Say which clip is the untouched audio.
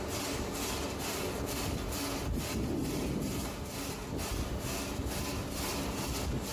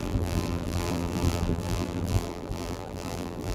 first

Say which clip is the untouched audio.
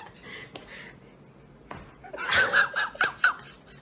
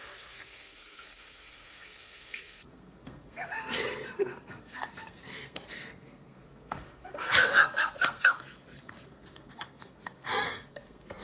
first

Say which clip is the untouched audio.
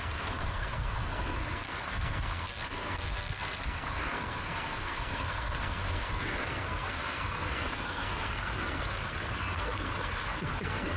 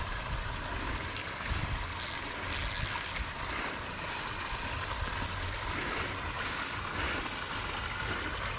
second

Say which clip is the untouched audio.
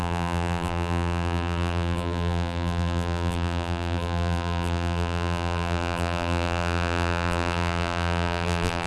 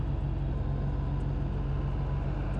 second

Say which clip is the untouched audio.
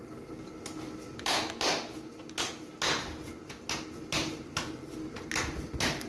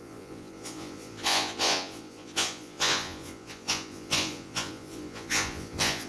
first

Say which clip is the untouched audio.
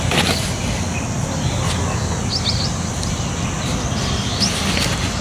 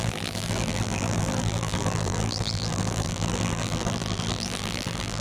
first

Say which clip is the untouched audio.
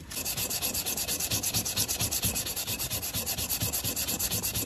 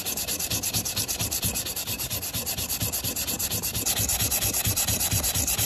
first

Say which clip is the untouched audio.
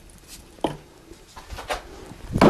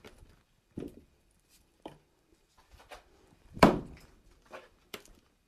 first